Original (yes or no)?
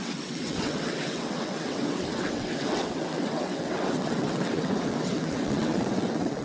no